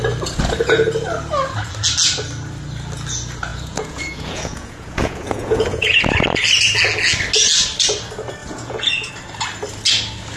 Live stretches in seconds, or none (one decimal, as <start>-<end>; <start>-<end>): 0.0-3.5; 6.0-8.4; 9.1-10.4

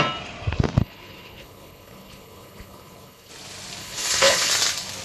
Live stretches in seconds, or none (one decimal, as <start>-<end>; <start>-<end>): 0.0-0.8; 3.3-3.8; 4.5-5.0

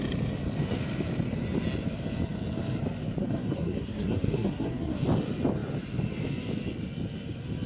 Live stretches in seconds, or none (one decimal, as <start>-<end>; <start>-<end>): 0.0-3.2; 5.0-7.7

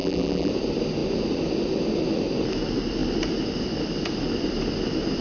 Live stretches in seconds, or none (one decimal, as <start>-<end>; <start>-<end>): 0.5-5.2

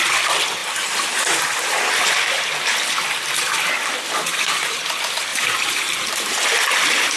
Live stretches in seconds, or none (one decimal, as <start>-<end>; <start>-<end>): 0.0-0.6; 1.9-5.3

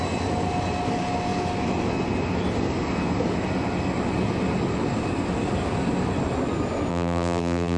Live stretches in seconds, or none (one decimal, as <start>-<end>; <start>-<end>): 0.0-6.9